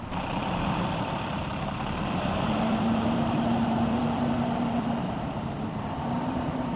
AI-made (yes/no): yes